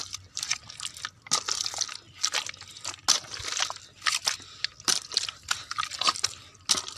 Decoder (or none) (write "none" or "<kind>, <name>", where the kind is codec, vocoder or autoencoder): none